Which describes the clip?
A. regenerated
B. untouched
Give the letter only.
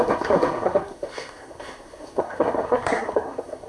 A